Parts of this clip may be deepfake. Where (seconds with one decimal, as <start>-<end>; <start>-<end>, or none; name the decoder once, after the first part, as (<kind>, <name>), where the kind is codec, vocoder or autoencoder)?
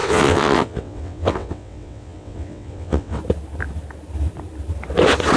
0.0-3.2 (vocoder, WaveNeXt)